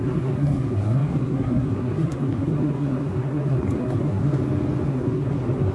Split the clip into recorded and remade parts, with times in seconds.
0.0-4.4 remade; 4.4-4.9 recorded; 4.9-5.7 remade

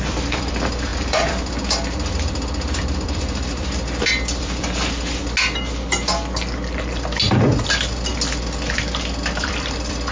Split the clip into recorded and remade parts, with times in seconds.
0.0-5.2 remade; 5.2-7.6 recorded; 7.6-8.1 remade; 8.1-9.4 recorded; 9.4-10.1 remade

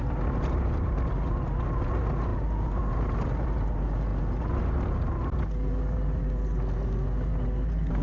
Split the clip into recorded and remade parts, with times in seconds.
0.0-8.0 recorded

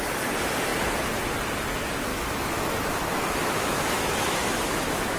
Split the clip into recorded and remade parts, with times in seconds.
0.0-2.1 recorded; 2.1-5.2 remade

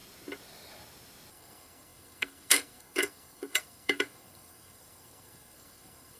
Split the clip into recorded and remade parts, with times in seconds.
0.0-1.3 recorded; 1.3-6.2 remade

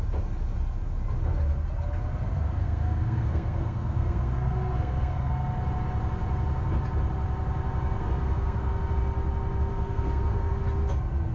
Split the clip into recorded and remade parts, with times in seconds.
0.0-2.6 recorded; 2.6-5.3 remade; 5.3-8.0 recorded; 8.0-8.7 remade; 8.7-9.7 recorded; 9.7-10.6 remade; 10.6-11.3 recorded